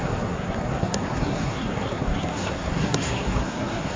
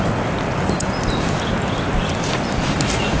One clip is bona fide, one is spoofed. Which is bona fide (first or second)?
second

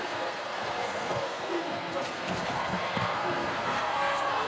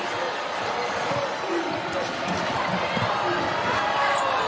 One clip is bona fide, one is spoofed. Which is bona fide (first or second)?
second